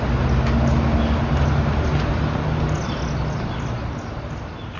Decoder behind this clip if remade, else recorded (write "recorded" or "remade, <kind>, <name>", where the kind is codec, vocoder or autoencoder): recorded